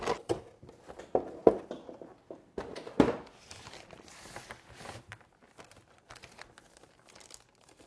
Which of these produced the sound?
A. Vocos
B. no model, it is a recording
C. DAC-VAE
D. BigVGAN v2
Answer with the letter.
B